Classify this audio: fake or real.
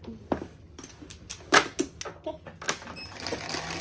real